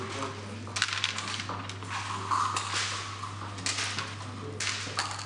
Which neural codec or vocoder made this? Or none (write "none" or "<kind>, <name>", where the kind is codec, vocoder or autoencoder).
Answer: none